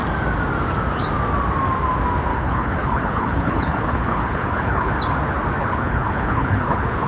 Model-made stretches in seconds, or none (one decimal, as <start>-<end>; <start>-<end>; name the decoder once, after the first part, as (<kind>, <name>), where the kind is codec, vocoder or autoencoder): 2.3-4.9 (codec, HILCodec); 5.6-7.1